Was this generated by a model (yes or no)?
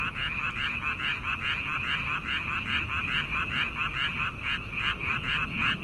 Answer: no